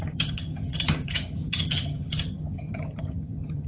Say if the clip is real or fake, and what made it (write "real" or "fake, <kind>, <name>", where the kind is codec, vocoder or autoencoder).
fake, vocoder, HiFi-GAN